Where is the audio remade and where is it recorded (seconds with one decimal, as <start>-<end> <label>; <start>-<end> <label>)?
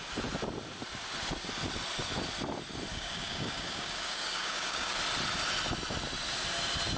0.0-2.9 recorded; 2.9-4.9 remade; 4.9-7.0 recorded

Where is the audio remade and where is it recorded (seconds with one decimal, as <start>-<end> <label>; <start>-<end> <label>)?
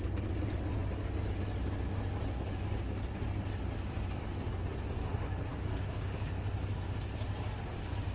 0.0-5.5 recorded; 5.5-6.3 remade; 6.3-8.1 recorded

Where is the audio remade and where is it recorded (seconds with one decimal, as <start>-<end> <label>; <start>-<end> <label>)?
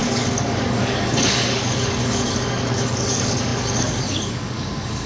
0.0-5.1 remade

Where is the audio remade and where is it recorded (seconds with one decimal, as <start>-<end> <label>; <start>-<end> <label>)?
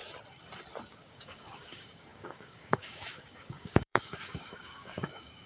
0.0-0.9 recorded; 0.9-5.5 remade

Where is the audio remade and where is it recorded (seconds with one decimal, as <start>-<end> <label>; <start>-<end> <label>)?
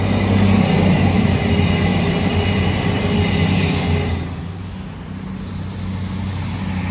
0.0-6.9 recorded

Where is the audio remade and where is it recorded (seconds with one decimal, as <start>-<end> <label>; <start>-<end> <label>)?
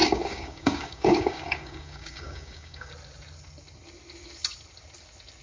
0.0-2.9 remade; 2.9-5.4 recorded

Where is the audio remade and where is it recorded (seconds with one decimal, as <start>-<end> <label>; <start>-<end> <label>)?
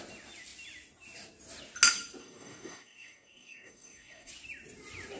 0.0-2.2 recorded; 2.2-4.3 remade; 4.3-5.2 recorded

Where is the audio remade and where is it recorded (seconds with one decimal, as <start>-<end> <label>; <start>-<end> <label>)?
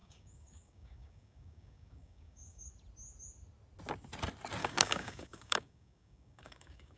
0.0-2.7 remade; 2.7-4.6 recorded; 4.6-7.0 remade